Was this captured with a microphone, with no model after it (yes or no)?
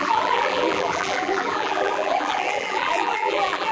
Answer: no